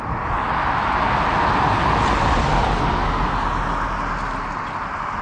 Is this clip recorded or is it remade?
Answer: recorded